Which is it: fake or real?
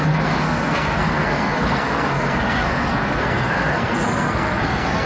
fake